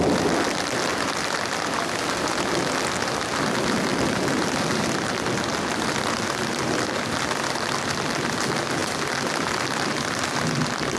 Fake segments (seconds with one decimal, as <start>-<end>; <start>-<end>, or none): 0.9-1.4; 3.9-7.9